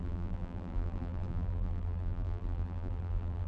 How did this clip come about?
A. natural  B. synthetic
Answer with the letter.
B